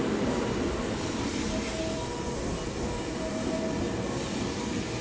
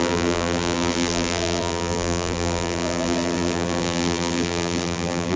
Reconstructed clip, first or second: second